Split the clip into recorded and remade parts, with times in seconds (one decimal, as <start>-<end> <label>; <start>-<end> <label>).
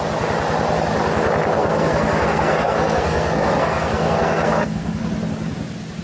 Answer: 0.0-1.5 recorded; 1.5-5.1 remade; 5.1-6.0 recorded